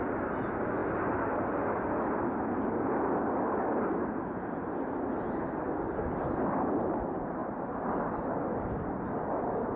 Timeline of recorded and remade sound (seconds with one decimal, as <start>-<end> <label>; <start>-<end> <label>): 0.0-9.8 recorded